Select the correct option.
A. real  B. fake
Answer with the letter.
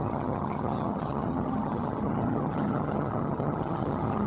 B